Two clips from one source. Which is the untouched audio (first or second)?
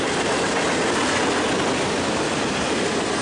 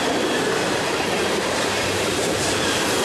first